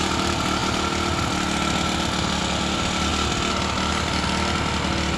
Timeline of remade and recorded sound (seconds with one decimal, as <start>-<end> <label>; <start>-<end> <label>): 0.0-5.2 recorded